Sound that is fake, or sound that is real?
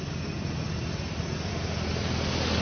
real